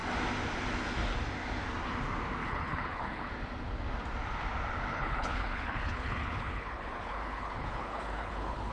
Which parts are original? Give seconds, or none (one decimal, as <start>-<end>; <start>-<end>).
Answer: 0.0-2.4; 3.3-4.9

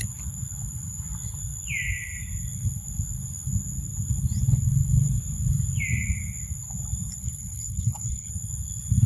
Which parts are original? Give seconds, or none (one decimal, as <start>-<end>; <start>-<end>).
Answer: 0.0-7.2; 8.3-9.1

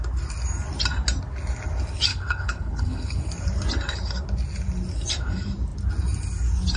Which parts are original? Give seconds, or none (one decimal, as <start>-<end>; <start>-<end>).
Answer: 0.0-2.1; 3.3-6.8

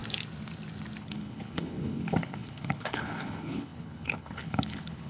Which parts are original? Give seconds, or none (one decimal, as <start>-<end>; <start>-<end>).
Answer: 0.0-1.0